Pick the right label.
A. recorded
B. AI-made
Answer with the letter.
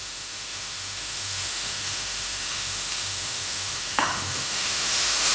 B